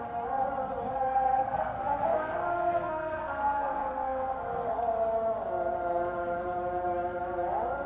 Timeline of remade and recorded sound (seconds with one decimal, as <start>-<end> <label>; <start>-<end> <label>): 0.0-0.9 recorded; 0.9-4.7 remade; 4.7-7.9 recorded